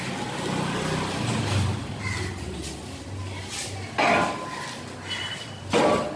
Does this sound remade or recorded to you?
recorded